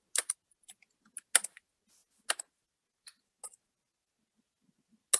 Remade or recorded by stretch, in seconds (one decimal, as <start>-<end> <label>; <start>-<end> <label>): 0.0-5.2 recorded